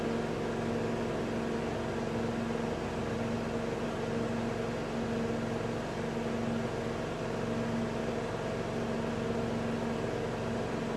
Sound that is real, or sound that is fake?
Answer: real